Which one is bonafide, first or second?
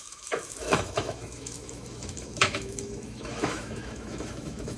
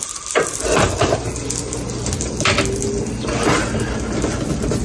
second